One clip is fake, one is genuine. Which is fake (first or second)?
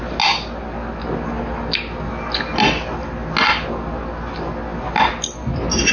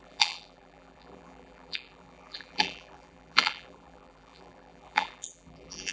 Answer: second